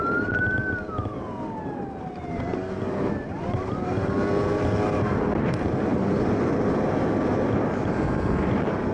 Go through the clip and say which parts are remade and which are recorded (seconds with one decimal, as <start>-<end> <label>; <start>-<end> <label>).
0.0-8.9 recorded

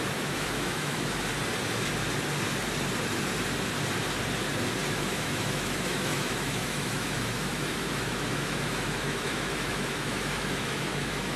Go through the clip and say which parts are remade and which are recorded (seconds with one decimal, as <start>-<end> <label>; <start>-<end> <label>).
0.0-1.3 remade; 1.3-4.9 recorded; 4.9-11.4 remade

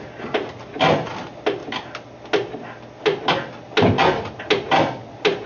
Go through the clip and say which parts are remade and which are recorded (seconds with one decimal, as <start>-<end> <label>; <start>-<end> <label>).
0.0-5.5 recorded